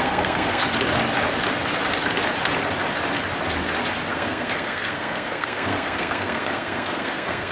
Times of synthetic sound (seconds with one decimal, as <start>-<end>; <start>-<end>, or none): 0.0-0.6; 4.1-7.5